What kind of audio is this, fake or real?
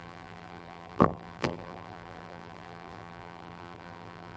fake